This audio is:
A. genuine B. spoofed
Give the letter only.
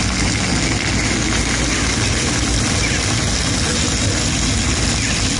A